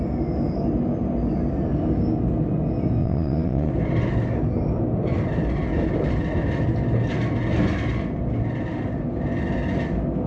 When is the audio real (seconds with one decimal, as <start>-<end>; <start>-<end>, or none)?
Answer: 0.0-3.0; 3.7-10.3